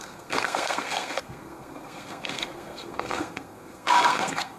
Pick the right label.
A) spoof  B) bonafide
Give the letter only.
A